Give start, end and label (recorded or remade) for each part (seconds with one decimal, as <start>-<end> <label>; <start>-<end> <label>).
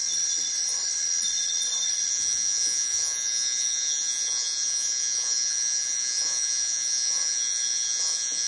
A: 0.0-2.1 recorded; 2.1-8.5 remade